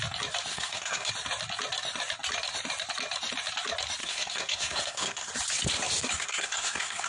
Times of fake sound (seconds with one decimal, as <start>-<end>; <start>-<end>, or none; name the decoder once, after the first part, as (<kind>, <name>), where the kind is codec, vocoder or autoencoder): 0.5-1.1 (codec, SNAC); 4.0-5.3; 6.1-7.1